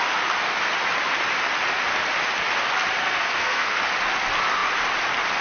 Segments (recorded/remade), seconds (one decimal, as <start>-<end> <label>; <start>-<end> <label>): 0.0-3.0 recorded; 3.0-3.8 remade; 3.8-5.4 recorded